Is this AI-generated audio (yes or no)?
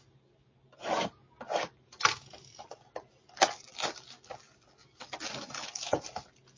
no